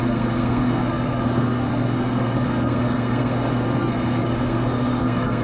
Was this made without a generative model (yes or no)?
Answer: no